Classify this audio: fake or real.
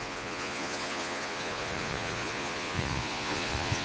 fake